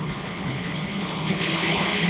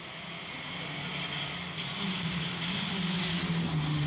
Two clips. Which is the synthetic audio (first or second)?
first